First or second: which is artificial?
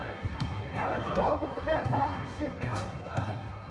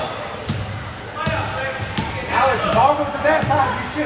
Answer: first